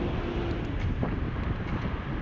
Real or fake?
real